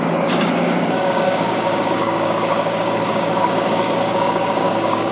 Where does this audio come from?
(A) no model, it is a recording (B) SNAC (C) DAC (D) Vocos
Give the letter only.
C